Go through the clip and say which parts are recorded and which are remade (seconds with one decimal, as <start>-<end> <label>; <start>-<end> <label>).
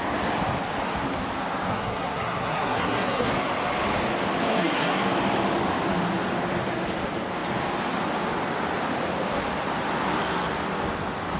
0.0-1.7 recorded; 1.7-3.3 remade; 3.3-4.5 recorded; 4.5-5.0 remade; 5.0-11.4 recorded